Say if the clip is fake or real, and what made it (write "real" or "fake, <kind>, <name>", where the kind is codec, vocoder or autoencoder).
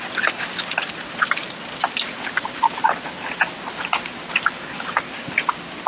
real